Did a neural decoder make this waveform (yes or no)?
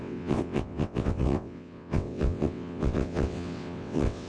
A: yes